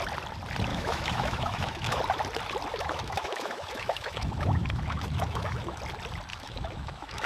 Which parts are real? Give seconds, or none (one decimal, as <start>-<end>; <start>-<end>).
0.0-0.7; 2.0-2.7; 5.8-6.3